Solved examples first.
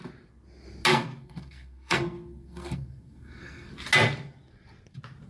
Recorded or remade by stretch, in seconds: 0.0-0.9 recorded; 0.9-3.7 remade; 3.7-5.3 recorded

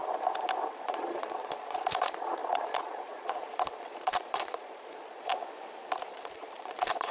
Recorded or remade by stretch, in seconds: 0.0-0.7 recorded; 0.7-5.3 remade; 5.3-6.1 recorded; 6.1-7.1 remade

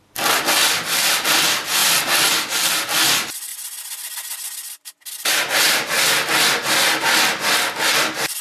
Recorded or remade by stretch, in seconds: 0.0-8.4 recorded